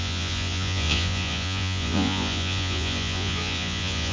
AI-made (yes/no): yes